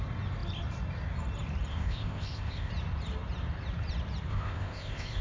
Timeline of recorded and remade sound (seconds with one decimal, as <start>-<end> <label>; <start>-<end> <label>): 0.0-1.7 recorded; 1.7-2.7 remade; 2.7-4.3 recorded; 4.3-5.2 remade